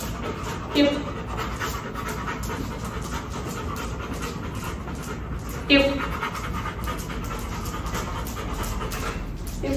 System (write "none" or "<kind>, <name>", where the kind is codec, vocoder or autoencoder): none